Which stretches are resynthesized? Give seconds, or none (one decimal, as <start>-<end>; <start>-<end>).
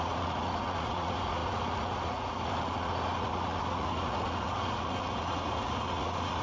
0.0-6.4